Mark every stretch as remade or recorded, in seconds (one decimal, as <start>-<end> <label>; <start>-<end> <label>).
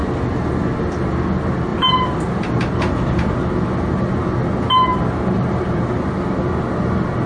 0.0-1.7 recorded; 1.7-3.4 remade; 3.4-4.9 recorded; 4.9-6.0 remade; 6.0-7.3 recorded